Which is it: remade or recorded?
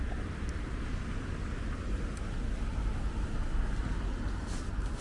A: recorded